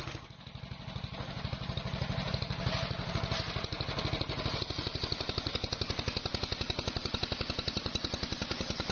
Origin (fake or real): real